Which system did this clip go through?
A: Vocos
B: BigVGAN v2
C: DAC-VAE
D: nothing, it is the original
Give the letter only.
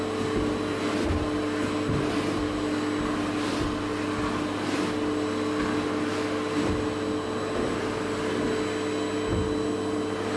D